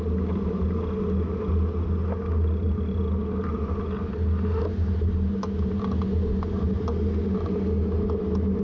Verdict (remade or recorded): recorded